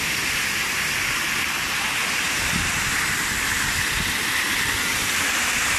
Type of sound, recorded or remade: recorded